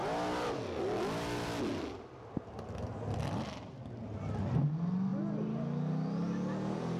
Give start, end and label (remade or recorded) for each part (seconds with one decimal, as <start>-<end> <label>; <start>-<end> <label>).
0.0-7.0 recorded